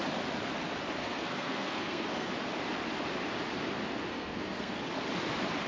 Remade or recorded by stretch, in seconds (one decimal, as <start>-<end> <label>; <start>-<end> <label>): 0.0-1.0 recorded; 1.0-2.3 remade; 2.3-4.1 recorded; 4.1-4.9 remade; 4.9-5.7 recorded

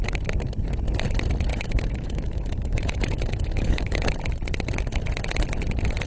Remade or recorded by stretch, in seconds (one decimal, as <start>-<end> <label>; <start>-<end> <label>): 0.0-1.5 recorded; 1.5-4.1 remade; 4.1-6.1 recorded

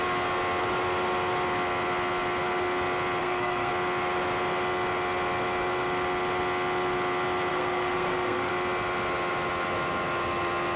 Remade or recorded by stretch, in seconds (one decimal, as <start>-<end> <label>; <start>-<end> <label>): 0.0-3.2 recorded; 3.2-3.7 remade; 3.7-7.5 recorded; 7.5-8.5 remade; 8.5-10.8 recorded

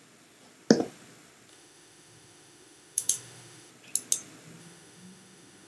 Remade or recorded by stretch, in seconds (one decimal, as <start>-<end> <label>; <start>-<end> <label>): 0.0-1.5 recorded; 1.5-3.7 remade; 3.7-4.6 recorded; 4.6-5.7 remade

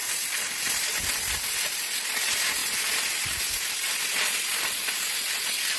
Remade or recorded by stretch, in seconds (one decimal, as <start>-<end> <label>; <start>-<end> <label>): 0.0-1.5 remade; 1.5-2.6 recorded; 2.6-3.4 remade; 3.4-4.5 recorded; 4.5-5.8 remade

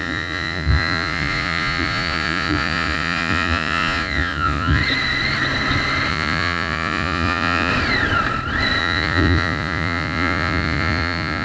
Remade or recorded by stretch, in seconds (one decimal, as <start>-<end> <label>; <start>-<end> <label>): 0.0-4.8 remade; 4.8-6.1 recorded; 6.1-7.7 remade; 7.7-8.8 recorded; 8.8-11.4 remade

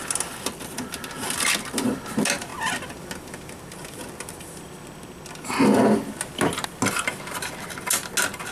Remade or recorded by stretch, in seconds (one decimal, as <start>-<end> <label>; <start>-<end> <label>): 0.0-8.5 recorded

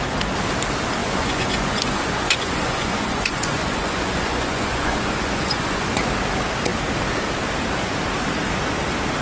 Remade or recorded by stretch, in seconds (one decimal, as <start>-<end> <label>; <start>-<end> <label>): 0.0-1.0 recorded; 1.0-6.1 remade; 6.1-9.2 recorded